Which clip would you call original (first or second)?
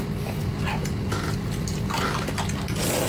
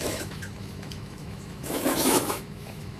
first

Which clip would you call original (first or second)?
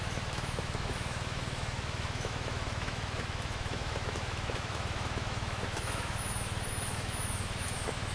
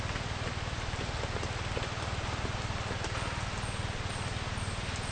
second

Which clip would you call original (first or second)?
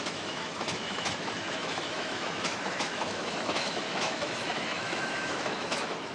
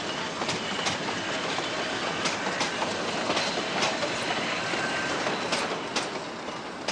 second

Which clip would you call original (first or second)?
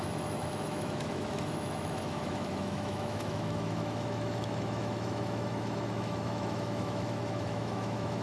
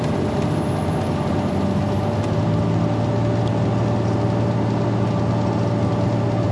second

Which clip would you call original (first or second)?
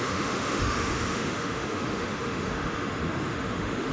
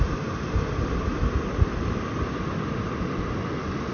second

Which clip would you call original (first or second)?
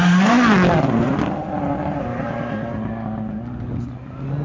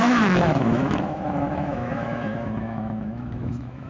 first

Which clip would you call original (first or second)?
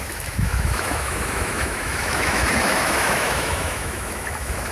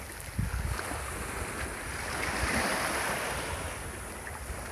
second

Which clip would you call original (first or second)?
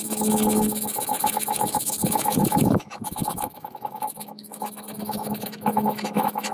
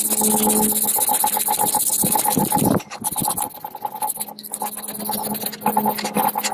second